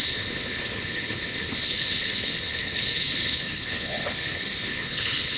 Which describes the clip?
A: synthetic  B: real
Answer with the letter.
A